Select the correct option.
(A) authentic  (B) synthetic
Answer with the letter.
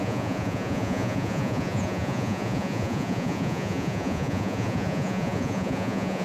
B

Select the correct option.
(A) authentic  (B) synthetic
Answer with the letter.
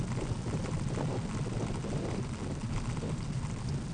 A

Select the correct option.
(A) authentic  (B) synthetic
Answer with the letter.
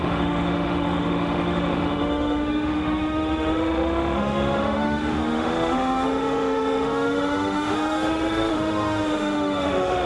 B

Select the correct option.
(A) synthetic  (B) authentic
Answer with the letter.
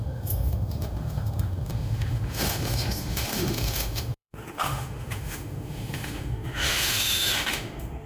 A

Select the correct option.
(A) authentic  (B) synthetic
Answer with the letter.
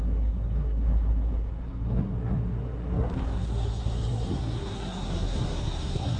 B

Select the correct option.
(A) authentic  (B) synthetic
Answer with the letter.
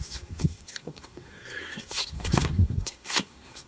B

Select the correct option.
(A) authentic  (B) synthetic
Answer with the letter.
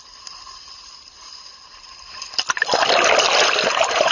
A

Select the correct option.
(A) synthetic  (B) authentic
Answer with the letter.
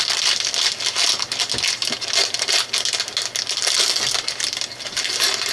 B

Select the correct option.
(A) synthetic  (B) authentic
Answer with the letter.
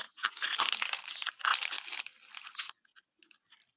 B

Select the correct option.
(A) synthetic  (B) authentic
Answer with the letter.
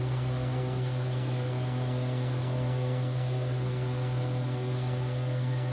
A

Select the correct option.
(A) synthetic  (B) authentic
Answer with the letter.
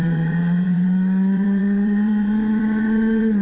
A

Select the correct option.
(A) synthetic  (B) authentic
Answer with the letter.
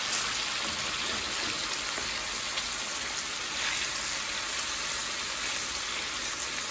B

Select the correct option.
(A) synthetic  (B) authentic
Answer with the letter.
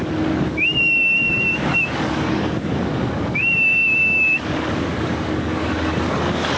A